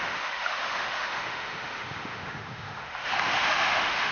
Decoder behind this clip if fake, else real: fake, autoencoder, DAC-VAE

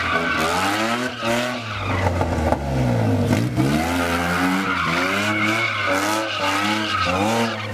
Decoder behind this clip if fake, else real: real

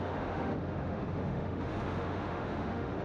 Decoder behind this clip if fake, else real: fake, autoencoder, DAC-VAE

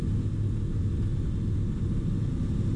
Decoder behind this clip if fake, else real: real